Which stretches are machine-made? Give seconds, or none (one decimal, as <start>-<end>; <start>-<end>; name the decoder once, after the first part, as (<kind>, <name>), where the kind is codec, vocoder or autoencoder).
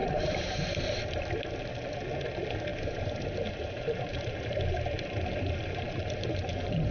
0.0-1.1 (vocoder, BigVGAN v2); 2.7-6.9